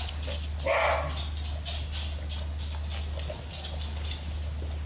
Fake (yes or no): no